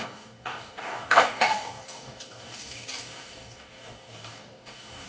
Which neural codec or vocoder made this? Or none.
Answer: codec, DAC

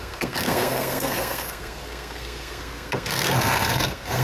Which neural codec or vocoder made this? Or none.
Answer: codec, SNAC